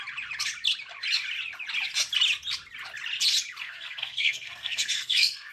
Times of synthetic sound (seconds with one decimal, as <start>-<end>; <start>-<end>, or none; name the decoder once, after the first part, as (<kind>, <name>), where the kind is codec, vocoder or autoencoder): 3.6-5.5 (codec, SNAC)